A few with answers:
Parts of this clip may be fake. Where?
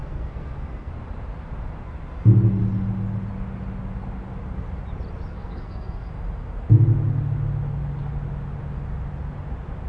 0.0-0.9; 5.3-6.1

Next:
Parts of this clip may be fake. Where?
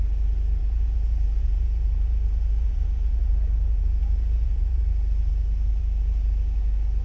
0.6-4.8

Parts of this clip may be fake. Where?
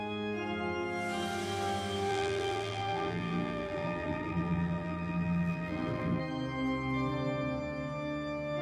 2.1-6.2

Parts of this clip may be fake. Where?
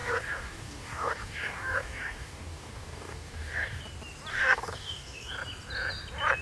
0.0-3.8; 4.3-5.3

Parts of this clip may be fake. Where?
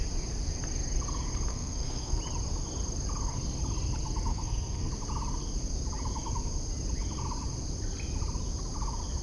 1.5-2.2; 4.3-4.9